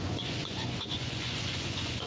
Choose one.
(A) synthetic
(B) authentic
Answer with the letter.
A